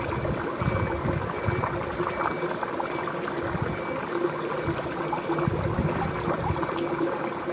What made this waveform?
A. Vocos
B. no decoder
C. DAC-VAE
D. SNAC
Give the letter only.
B